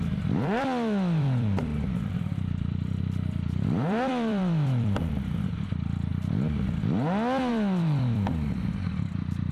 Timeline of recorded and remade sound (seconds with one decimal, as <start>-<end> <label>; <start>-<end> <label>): 0.0-6.1 remade; 6.1-7.5 recorded; 7.5-9.5 remade